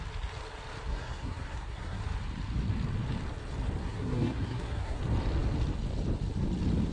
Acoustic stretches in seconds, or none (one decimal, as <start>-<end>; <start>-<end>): 0.0-0.9; 2.0-3.8; 5.0-6.9